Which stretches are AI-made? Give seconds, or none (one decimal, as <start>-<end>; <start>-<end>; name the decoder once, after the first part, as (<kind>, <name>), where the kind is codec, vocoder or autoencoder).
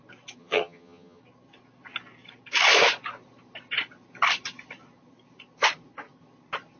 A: 0.4-1.2 (vocoder, HiFi-GAN)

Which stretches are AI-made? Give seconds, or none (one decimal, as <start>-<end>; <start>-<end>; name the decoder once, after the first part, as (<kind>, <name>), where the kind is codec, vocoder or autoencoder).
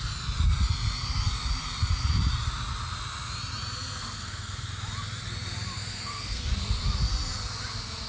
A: 4.0-4.7 (codec, SNAC); 5.9-6.4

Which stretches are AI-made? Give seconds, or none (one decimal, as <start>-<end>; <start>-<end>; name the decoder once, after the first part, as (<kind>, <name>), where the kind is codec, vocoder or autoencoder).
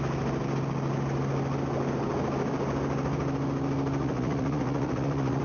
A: 4.0-5.4 (vocoder, Vocos)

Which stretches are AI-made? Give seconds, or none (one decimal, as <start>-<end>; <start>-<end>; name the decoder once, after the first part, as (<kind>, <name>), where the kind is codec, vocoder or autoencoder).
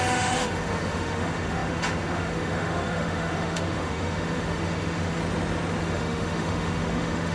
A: 0.0-5.2 (autoencoder, DAC-VAE); 5.8-7.3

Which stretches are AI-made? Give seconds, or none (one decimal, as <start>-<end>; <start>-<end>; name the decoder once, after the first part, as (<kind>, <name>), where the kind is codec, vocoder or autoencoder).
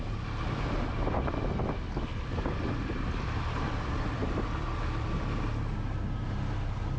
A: none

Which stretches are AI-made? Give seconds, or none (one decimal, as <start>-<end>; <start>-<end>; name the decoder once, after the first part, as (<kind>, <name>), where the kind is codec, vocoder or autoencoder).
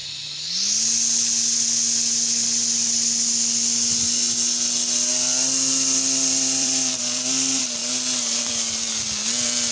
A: 5.1-7.8 (vocoder, BigVGAN v2); 8.4-9.7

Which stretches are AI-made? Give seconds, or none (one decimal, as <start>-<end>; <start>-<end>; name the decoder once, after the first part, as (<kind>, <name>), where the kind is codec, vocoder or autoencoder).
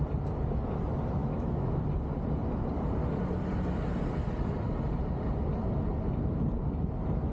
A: 1.2-1.8 (autoencoder, DAC-VAE)